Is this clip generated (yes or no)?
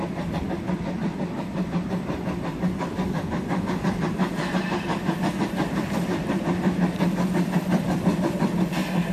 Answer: yes